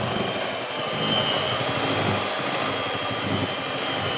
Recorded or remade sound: recorded